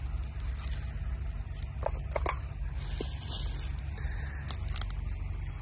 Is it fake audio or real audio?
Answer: real